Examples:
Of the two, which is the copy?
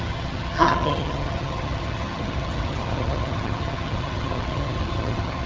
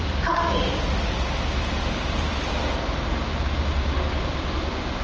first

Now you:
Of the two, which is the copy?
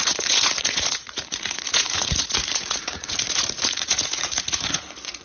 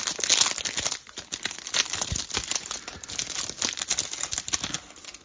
first